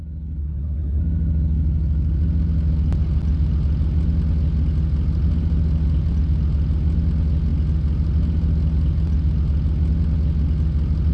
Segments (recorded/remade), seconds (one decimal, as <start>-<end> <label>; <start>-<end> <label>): 0.0-0.4 recorded; 0.4-1.0 remade; 1.0-11.1 recorded